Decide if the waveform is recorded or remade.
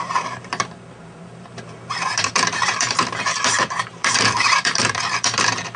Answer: remade